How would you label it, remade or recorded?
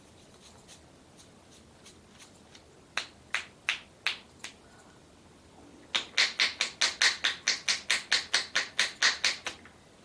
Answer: recorded